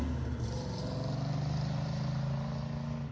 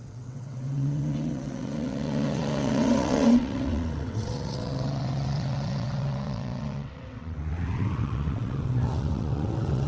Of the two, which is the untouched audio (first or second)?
first